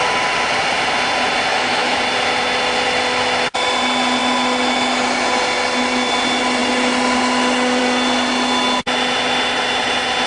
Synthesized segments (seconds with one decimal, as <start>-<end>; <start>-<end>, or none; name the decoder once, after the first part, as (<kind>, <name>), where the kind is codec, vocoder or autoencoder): 1.5-2.0 (autoencoder, DAC-VAE)